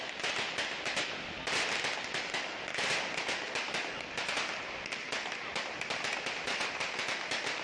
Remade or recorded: recorded